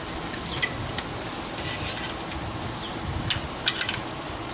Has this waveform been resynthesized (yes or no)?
no